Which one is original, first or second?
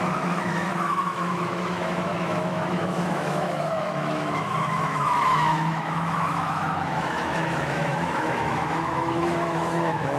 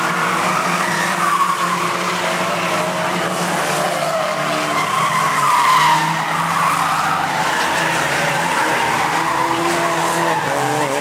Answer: second